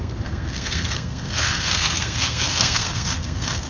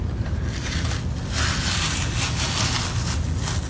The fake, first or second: first